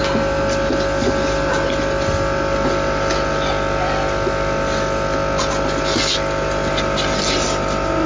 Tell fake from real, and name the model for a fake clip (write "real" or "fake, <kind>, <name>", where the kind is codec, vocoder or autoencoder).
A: real